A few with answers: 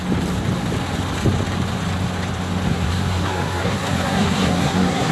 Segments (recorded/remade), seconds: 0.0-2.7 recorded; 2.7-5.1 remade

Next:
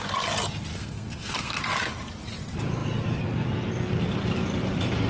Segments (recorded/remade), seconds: 0.0-0.7 recorded; 0.7-1.6 remade; 1.6-5.1 recorded